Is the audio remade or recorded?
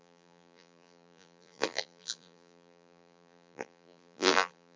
remade